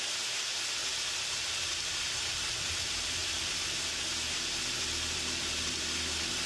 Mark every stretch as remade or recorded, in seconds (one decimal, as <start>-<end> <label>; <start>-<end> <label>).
0.0-6.5 recorded